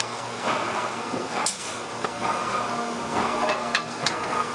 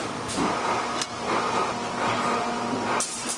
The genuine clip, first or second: second